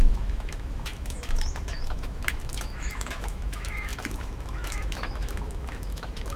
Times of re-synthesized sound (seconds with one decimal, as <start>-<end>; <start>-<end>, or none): 0.0-6.4

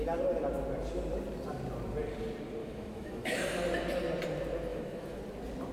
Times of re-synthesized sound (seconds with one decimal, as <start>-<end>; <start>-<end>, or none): 2.6-3.4; 4.7-5.2

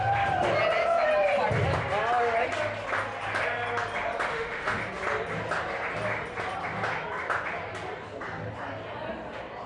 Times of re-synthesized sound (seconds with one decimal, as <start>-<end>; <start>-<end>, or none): 4.3-4.8

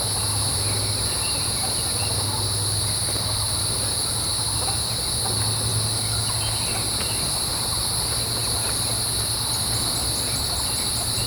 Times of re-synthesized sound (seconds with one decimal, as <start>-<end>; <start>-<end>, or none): none

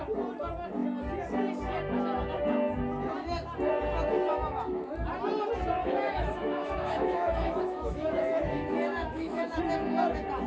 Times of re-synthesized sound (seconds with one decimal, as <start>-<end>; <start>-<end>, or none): 4.3-4.9; 5.8-9.6